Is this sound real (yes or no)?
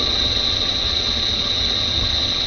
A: no